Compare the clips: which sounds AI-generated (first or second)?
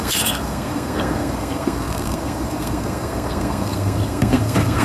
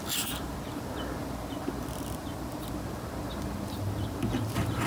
first